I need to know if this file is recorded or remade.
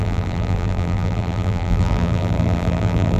remade